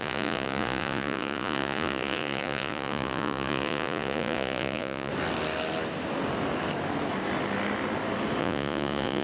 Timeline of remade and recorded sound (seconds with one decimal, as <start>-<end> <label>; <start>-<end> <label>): 0.0-5.1 remade; 5.1-8.4 recorded; 8.4-9.2 remade